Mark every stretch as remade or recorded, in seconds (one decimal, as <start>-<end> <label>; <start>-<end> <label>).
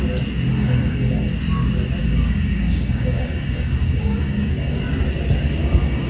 0.0-0.5 recorded; 0.5-1.3 remade; 1.3-2.0 recorded; 2.0-4.8 remade; 4.8-5.6 recorded; 5.6-6.1 remade